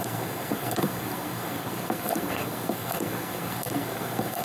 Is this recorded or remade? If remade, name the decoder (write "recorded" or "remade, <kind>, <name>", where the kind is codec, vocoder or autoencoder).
remade, codec, SNAC